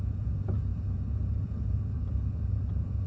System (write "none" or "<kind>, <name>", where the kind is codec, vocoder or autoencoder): vocoder, Vocos